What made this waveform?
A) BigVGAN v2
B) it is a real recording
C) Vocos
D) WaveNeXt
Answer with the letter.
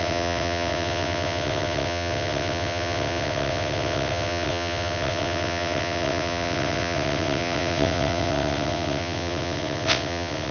D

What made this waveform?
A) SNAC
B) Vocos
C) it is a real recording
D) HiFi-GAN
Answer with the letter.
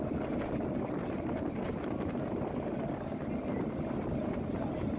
C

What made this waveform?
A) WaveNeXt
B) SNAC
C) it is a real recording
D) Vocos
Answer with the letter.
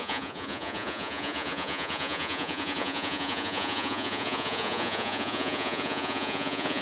D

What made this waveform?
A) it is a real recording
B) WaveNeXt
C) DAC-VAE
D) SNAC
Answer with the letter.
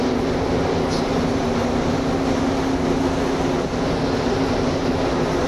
A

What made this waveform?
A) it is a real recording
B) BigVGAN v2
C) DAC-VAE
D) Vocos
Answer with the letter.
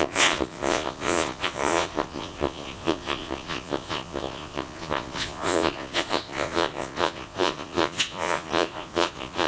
D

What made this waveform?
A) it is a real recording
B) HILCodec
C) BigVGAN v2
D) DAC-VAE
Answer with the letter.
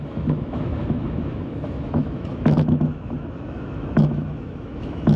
D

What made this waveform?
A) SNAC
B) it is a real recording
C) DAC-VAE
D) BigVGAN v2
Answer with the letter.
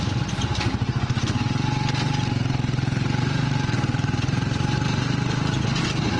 D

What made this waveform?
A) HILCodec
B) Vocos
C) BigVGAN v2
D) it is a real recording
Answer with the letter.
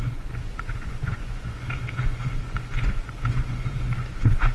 B